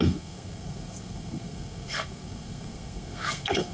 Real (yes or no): no